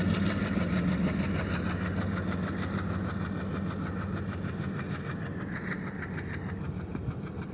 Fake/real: real